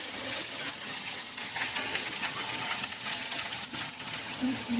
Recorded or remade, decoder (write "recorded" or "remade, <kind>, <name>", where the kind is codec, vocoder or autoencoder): remade, vocoder, HiFi-GAN